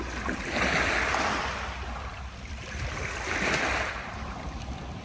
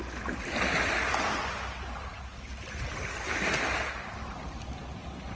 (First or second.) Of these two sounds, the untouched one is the second